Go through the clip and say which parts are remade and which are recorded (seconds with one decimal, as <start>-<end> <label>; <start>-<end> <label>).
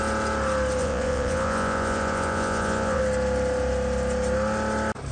0.0-0.8 recorded; 0.8-3.0 remade; 3.0-5.1 recorded